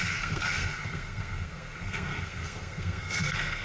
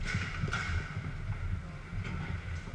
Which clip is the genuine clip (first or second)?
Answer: second